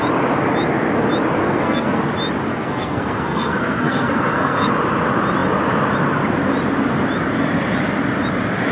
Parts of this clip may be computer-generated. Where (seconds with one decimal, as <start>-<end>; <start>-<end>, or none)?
1.4-2.0; 2.5-4.7